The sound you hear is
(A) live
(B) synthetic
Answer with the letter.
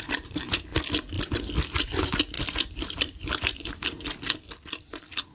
A